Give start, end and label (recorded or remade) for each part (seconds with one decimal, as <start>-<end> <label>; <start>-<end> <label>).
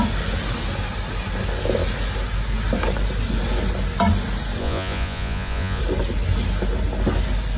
0.0-4.6 recorded; 4.6-5.8 remade; 5.8-7.6 recorded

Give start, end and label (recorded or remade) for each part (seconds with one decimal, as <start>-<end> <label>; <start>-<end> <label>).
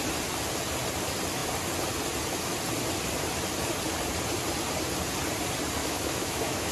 0.0-5.8 recorded; 5.8-6.7 remade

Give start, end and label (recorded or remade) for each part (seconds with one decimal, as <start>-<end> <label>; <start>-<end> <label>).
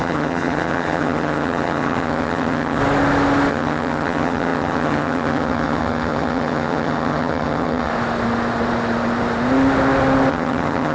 0.0-2.8 remade; 2.8-3.5 recorded; 3.5-7.9 remade; 7.9-10.3 recorded; 10.3-10.9 remade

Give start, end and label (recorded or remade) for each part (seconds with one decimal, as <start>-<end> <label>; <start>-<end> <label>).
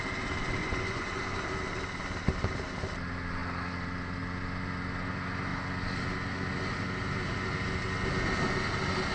0.0-0.6 recorded; 0.6-1.2 remade; 1.2-9.1 recorded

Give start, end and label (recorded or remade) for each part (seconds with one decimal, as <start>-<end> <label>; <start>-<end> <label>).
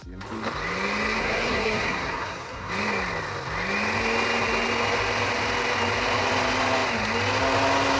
0.0-1.2 recorded; 1.2-2.7 remade; 2.7-8.0 recorded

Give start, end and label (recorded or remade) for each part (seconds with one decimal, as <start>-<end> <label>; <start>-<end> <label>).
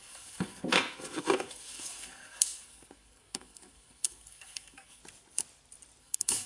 0.0-5.0 remade; 5.0-6.0 recorded; 6.0-6.5 remade